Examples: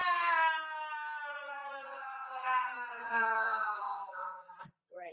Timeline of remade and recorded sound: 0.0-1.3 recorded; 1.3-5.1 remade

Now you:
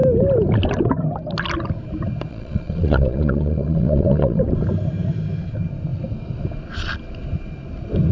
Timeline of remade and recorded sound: 0.0-2.3 recorded; 2.3-4.4 remade; 4.4-8.1 recorded

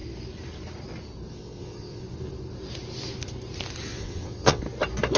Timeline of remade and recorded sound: 0.0-1.3 recorded; 1.3-2.0 remade; 2.0-3.9 recorded; 3.9-4.6 remade; 4.6-5.2 recorded

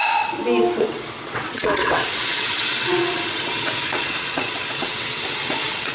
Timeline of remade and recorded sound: 0.0-0.8 recorded; 0.8-5.9 remade

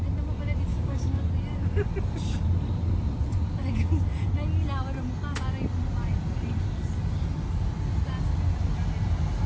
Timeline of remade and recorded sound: 0.0-0.7 recorded; 0.7-1.2 remade; 1.2-9.5 recorded

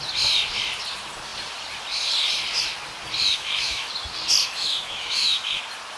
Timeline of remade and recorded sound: 0.0-3.3 recorded; 3.3-3.9 remade; 3.9-4.4 recorded; 4.4-5.6 remade; 5.6-6.0 recorded

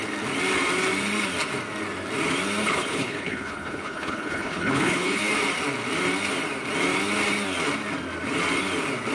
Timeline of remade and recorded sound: 0.0-2.6 recorded; 2.6-5.2 remade; 5.2-9.1 recorded

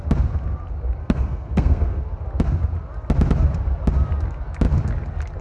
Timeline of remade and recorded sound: 0.0-1.0 recorded; 1.0-2.0 remade; 2.0-5.4 recorded